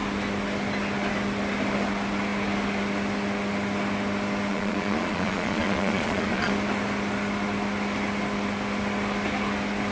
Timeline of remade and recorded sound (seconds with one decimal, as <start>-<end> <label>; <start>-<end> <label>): 0.0-4.5 recorded; 4.5-6.5 remade; 6.5-9.9 recorded